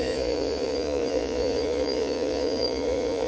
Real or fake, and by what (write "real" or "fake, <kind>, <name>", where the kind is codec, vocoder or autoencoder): fake, vocoder, Vocos